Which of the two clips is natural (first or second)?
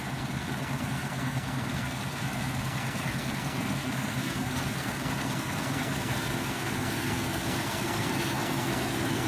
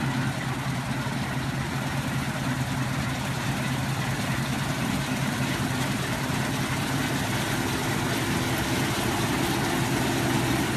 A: second